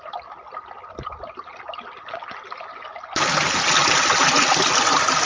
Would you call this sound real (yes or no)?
yes